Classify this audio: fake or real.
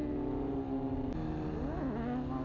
real